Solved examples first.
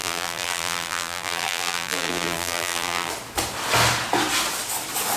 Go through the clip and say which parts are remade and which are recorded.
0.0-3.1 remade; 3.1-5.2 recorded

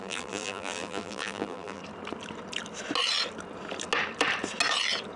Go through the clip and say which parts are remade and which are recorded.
0.0-1.8 remade; 1.8-5.2 recorded

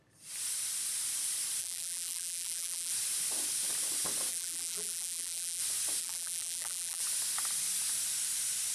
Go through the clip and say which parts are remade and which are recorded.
0.0-1.6 recorded; 1.6-2.9 remade; 2.9-4.3 recorded; 4.3-5.6 remade; 5.6-6.0 recorded; 6.0-7.0 remade; 7.0-8.7 recorded